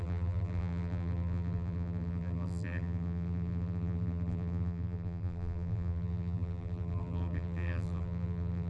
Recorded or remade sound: remade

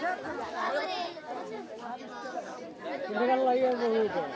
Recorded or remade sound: recorded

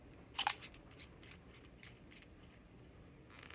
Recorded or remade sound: recorded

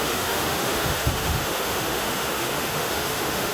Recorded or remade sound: remade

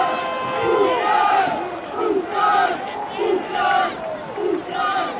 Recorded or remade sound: recorded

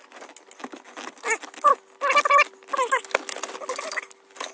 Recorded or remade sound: recorded